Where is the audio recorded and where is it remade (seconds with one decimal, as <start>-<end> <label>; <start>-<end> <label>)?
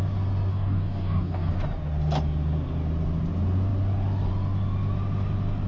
0.0-0.5 recorded; 0.5-1.5 remade; 1.5-5.7 recorded